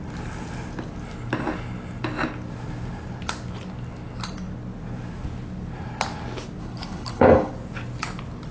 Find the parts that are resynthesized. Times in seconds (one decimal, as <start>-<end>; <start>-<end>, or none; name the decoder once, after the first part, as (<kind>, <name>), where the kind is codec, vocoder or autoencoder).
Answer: 6.6-7.5 (codec, HILCodec)